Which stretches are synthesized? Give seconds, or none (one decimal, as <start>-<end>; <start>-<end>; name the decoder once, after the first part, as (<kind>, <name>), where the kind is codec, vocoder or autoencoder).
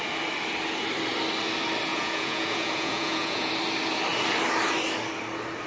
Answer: 1.9-3.5 (vocoder, Vocos)